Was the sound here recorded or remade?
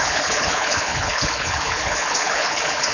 remade